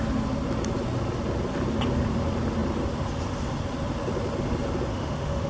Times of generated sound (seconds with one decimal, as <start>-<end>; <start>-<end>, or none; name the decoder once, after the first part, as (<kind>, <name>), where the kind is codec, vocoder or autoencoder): 4.9-5.5 (autoencoder, DAC-VAE)

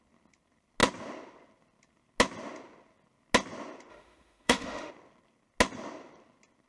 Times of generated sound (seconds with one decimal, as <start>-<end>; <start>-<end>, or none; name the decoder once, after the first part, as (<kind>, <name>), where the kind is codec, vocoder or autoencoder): 3.9-4.9 (autoencoder, DAC-VAE)